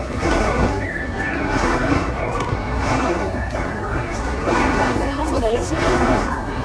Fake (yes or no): yes